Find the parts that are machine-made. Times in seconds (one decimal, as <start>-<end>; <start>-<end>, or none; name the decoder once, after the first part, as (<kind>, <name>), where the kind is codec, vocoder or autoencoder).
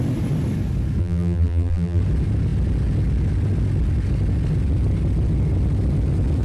1.0-2.0 (vocoder, BigVGAN v2)